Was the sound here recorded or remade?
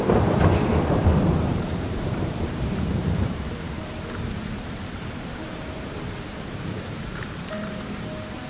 remade